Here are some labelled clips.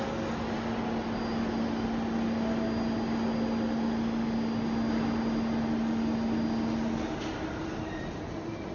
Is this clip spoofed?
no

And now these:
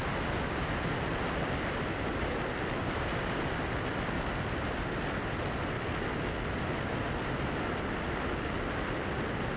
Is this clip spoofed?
no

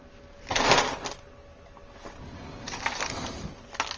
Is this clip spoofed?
no